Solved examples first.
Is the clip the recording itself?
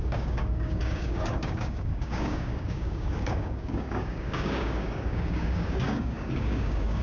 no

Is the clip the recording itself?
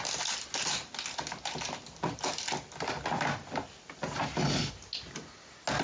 yes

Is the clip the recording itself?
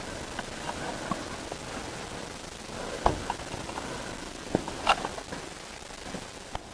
yes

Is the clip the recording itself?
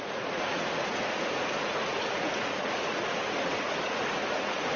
no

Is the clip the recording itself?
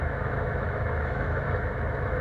no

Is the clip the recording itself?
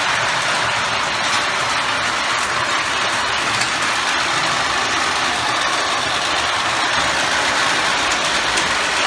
yes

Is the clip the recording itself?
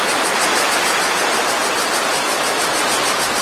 yes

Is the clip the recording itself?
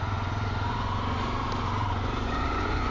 no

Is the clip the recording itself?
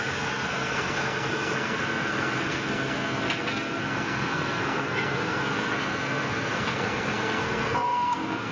no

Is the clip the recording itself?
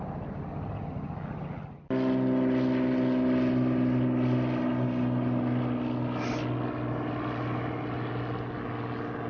yes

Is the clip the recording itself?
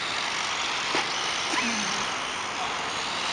yes